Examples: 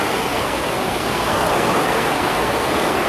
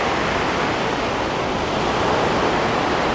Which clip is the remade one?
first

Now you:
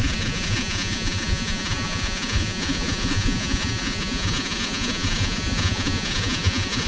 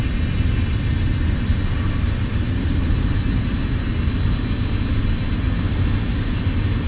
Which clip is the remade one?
first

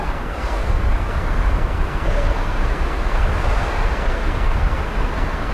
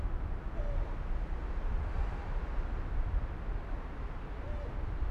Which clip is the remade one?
first